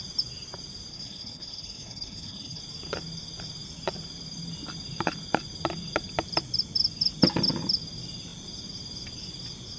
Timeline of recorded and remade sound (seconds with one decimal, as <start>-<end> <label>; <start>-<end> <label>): 0.0-0.9 recorded; 0.9-2.6 remade; 2.6-9.8 recorded